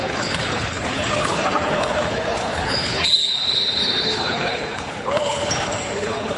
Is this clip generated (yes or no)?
yes